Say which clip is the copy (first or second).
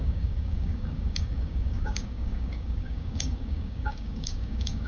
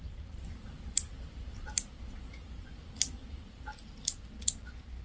first